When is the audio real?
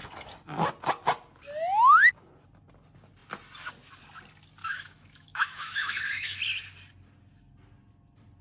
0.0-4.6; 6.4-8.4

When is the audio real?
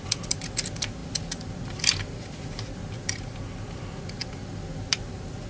0.0-5.5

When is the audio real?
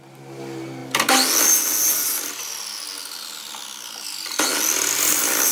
0.0-5.5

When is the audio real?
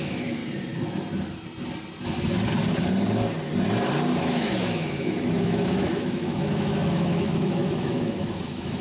0.4-4.2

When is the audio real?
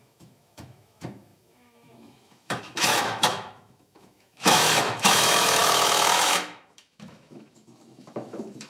none